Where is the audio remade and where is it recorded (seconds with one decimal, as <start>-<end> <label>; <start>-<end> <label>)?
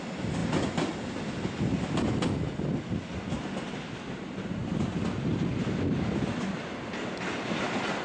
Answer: 0.0-8.0 recorded